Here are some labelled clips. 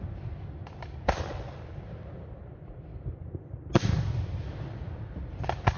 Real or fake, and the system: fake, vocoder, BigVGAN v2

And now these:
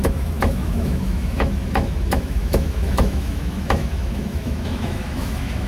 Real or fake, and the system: fake, autoencoder, DAC-VAE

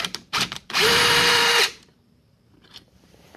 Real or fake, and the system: fake, vocoder, BigVGAN v2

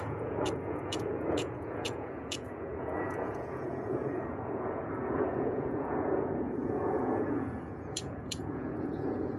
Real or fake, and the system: fake, vocoder, Vocos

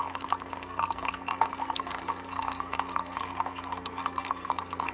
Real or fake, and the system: fake, codec, SNAC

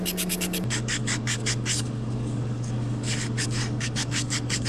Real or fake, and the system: fake, codec, DAC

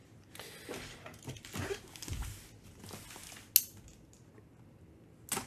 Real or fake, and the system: real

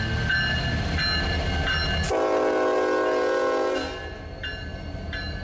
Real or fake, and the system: real